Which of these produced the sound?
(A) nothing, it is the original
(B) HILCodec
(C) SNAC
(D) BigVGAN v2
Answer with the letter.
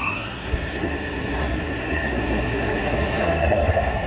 C